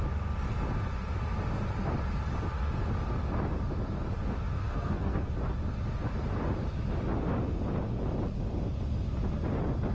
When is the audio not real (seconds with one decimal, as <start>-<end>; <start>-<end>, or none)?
4.6-5.3